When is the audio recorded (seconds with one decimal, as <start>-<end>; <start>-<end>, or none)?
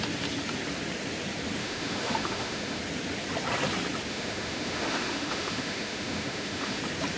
0.0-1.6; 2.8-4.1; 6.8-7.2